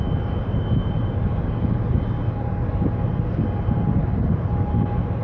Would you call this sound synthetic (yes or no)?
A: no